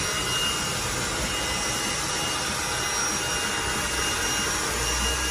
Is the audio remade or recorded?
recorded